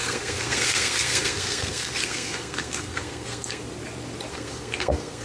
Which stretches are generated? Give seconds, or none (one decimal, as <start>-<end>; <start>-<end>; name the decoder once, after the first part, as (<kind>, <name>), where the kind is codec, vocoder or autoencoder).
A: 0.0-3.6 (codec, SNAC); 4.3-5.2